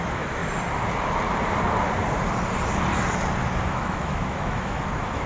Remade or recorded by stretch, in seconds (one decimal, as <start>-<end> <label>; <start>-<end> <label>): 0.0-0.4 remade; 0.4-3.6 recorded; 3.6-5.3 remade